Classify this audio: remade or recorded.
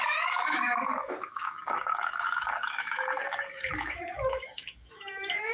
remade